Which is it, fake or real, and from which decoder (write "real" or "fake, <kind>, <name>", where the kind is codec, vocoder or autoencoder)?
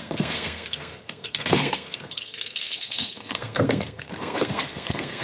fake, codec, SNAC